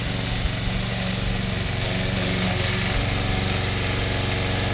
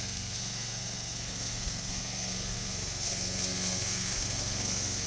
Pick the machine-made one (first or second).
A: second